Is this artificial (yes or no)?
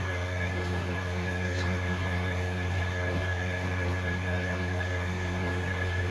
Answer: yes